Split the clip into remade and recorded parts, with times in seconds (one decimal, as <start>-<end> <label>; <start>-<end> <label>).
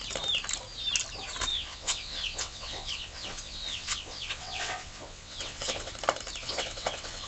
0.0-1.5 recorded; 1.5-5.9 remade; 5.9-6.4 recorded; 6.4-7.3 remade